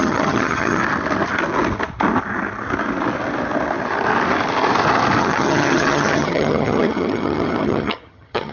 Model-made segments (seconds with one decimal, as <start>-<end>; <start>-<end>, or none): 0.0-0.8; 5.2-8.5